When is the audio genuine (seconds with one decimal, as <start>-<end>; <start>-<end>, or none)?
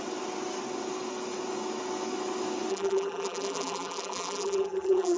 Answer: 0.0-2.7